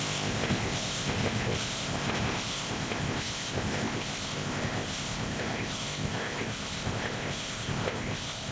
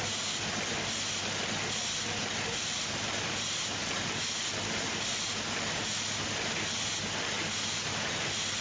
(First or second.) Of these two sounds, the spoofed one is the first